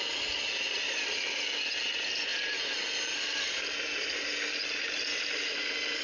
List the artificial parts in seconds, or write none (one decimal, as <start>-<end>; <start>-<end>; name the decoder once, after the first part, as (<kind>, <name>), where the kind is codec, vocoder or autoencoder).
none